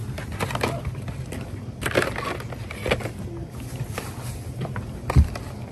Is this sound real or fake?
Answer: real